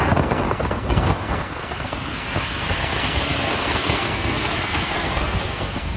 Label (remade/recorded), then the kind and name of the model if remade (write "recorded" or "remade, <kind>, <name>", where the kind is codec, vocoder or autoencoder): remade, codec, SNAC